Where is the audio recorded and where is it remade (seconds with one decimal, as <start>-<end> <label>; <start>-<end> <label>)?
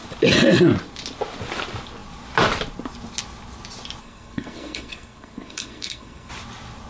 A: 0.0-4.0 recorded; 4.0-6.3 remade; 6.3-6.9 recorded